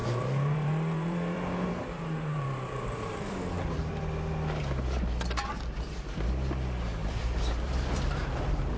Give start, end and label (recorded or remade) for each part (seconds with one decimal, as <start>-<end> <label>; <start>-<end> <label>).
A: 0.0-4.0 remade; 4.0-7.0 recorded; 7.0-8.8 remade